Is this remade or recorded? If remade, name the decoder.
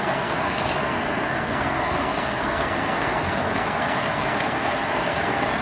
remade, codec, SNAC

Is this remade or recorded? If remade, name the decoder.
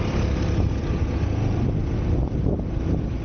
recorded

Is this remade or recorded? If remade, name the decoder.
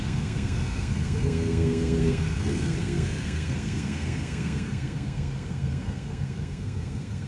remade, codec, SNAC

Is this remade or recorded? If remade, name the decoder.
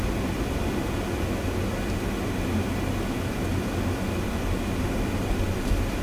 recorded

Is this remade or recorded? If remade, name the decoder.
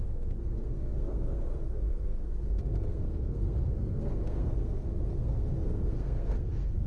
remade, codec, SNAC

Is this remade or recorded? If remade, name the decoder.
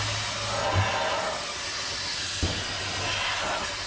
recorded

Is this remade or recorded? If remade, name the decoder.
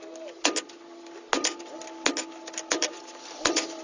recorded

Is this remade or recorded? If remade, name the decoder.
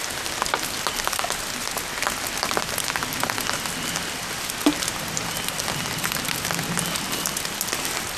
recorded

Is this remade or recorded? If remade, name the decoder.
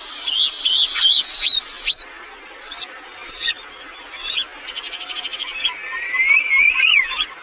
recorded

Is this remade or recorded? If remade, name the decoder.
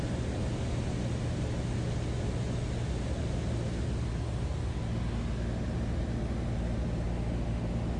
recorded